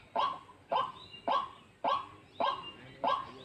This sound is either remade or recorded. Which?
recorded